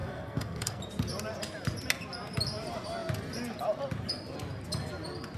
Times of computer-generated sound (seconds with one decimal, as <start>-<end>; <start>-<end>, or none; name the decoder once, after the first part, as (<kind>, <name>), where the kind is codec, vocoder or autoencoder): 0.0-0.8 (codec, SNAC)